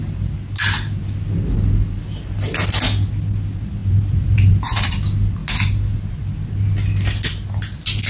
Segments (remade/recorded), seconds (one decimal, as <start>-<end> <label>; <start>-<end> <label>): 0.0-3.8 recorded; 3.8-4.9 remade; 4.9-8.1 recorded